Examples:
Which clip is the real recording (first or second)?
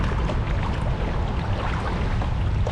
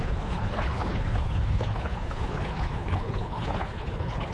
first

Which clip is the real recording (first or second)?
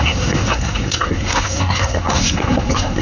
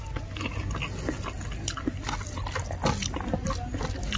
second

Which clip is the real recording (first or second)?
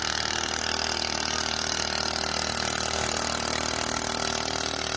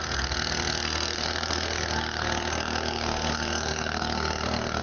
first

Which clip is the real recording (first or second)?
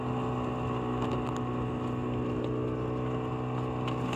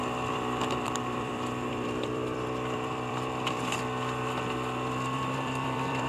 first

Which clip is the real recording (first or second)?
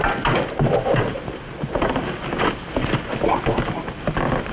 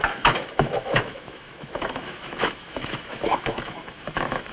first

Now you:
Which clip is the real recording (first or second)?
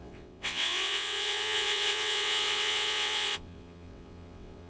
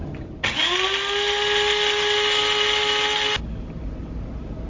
second